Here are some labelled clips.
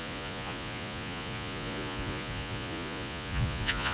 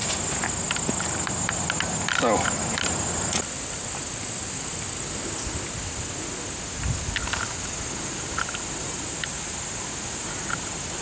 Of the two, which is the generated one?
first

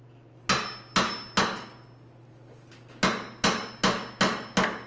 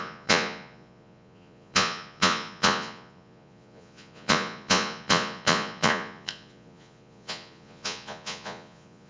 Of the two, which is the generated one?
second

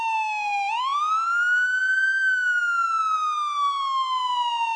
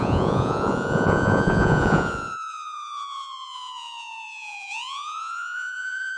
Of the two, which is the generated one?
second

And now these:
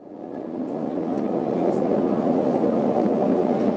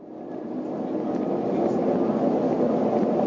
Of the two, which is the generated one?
first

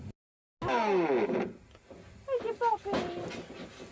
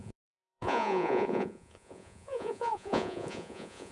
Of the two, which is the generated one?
second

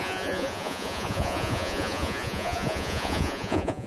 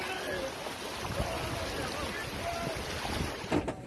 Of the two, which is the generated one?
first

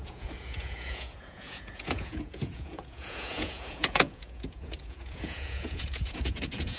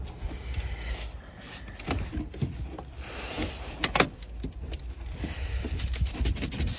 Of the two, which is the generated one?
first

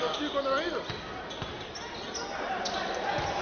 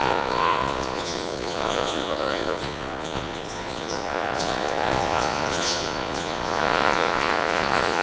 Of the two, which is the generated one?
second